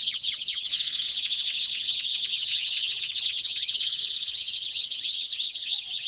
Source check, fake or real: fake